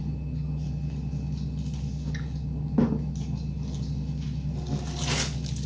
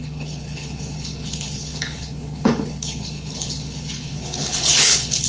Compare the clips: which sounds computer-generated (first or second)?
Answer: second